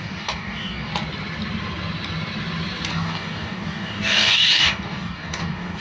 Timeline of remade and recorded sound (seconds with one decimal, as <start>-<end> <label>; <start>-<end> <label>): 0.0-0.9 remade; 0.9-2.9 recorded; 2.9-5.8 remade